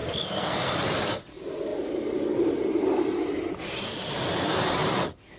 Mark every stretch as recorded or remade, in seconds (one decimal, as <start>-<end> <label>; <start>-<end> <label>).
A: 0.0-0.7 remade; 0.7-5.4 recorded